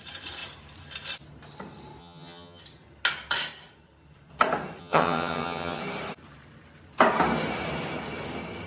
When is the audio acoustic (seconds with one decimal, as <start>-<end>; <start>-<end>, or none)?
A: 0.0-2.0; 2.6-4.8; 5.8-8.7